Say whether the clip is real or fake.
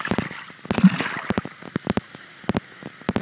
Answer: real